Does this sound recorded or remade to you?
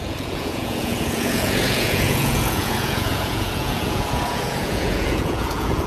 remade